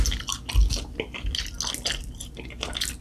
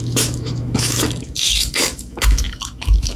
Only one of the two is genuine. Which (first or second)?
first